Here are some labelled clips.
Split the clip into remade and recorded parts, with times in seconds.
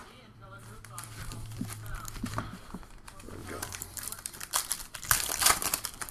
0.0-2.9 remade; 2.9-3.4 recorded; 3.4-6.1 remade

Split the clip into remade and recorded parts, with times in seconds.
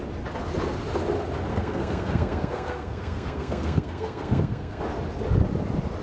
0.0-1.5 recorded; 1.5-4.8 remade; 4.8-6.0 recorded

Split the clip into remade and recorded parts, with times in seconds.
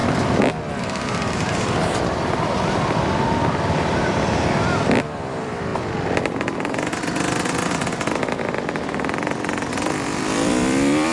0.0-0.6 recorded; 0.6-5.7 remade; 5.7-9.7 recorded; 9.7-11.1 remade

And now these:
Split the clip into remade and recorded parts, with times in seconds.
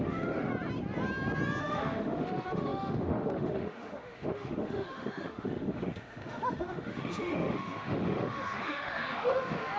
0.0-0.5 remade; 0.5-1.6 recorded; 1.6-9.8 remade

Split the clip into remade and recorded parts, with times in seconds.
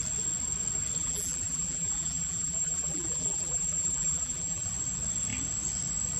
0.0-1.0 recorded; 1.0-4.7 remade; 4.7-6.2 recorded